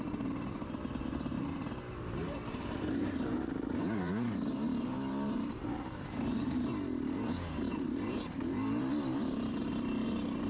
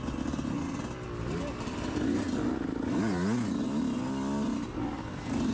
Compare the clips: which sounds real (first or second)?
second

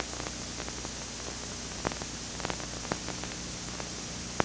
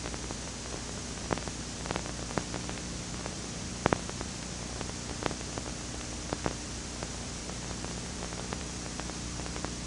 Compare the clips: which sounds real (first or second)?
first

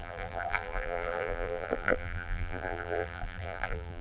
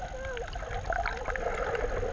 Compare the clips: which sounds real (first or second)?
second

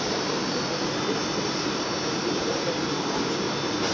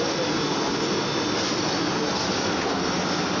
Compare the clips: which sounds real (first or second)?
second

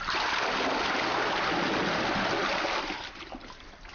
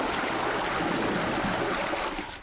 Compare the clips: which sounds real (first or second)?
first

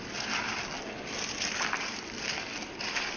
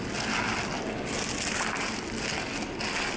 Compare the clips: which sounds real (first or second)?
second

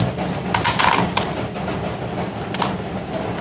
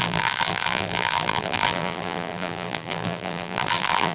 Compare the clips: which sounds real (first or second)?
first